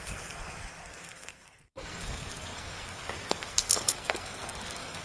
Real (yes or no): no